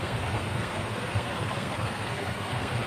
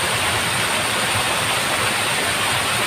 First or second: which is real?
second